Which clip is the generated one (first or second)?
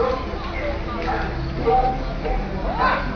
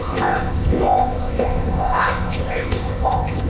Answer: second